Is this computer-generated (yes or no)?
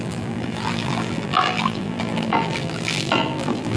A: yes